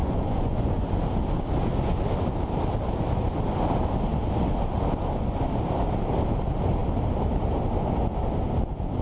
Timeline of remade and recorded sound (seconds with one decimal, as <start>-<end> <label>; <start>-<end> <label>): 0.0-0.9 remade; 0.9-9.0 recorded

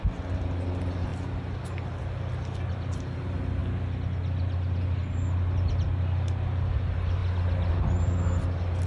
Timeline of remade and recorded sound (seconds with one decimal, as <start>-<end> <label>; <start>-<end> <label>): 0.0-8.9 recorded

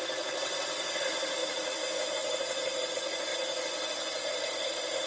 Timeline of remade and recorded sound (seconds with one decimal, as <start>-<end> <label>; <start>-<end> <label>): 0.0-5.1 recorded

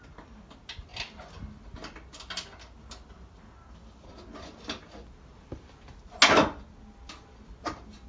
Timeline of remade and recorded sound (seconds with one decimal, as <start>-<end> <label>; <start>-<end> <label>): 0.0-8.1 recorded

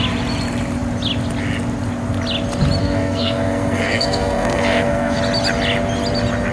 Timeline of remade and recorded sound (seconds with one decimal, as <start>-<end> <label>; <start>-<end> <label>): 0.0-2.8 recorded; 2.8-5.2 remade; 5.2-6.5 recorded

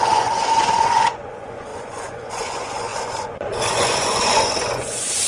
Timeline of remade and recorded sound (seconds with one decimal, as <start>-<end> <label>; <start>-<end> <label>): 0.0-5.3 remade

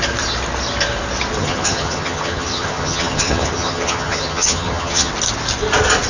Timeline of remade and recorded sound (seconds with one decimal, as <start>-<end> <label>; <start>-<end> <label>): 0.0-1.4 recorded; 1.4-5.1 remade; 5.1-6.1 recorded